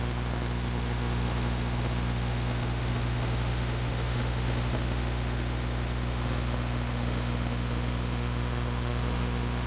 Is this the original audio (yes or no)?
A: no